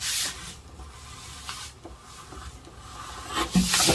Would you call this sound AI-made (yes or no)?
no